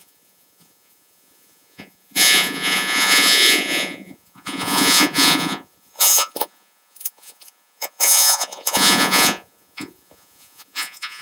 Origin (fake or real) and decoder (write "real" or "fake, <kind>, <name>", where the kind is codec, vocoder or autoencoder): fake, vocoder, Vocos